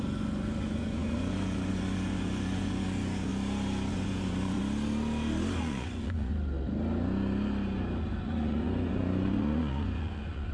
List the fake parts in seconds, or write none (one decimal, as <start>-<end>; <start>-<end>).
0.0-3.3; 3.9-4.6; 5.6-6.3; 8.0-10.5

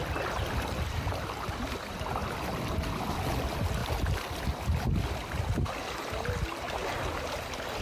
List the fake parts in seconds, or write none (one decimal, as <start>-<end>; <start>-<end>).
0.0-3.8; 6.0-6.8

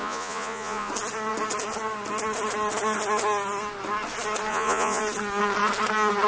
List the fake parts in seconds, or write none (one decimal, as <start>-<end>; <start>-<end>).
0.0-0.9; 4.5-5.0

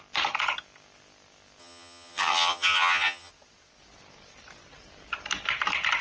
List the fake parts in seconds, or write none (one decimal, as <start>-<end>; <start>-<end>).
1.6-3.3

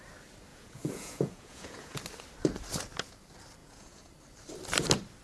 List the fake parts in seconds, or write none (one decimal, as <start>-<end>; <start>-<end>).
0.5-2.0; 3.6-4.1

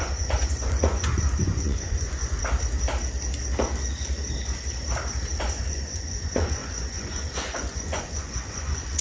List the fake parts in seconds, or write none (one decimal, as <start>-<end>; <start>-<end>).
0.0-2.4; 5.4-9.0

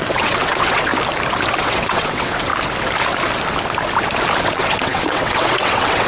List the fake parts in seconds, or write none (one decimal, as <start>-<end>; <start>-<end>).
0.0-0.9; 1.6-2.5; 4.4-6.1